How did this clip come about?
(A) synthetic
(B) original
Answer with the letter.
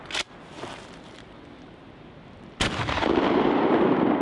B